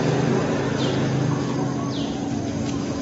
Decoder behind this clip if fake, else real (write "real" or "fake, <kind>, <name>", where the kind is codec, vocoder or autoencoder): real